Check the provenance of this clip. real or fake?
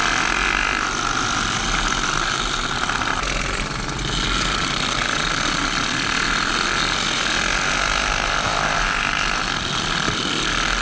real